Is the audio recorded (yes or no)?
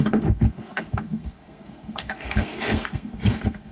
no